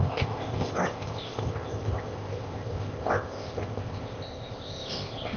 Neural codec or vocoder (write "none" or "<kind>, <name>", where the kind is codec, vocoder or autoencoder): codec, ZipCodec